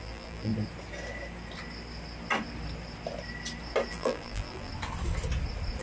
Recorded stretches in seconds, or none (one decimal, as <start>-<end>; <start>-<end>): 0.5-3.9; 4.7-5.8